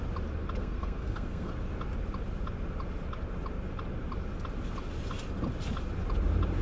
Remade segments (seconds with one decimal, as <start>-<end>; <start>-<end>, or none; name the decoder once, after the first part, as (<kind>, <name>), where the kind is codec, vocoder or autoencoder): 0.6-1.5 (codec, SNAC)